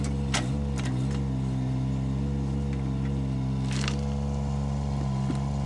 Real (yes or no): yes